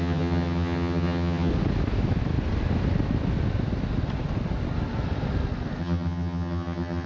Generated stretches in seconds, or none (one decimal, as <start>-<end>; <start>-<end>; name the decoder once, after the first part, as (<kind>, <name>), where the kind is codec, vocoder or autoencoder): 0.0-1.5 (vocoder, HiFi-GAN); 5.8-7.1